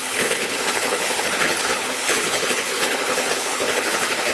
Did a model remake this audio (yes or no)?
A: yes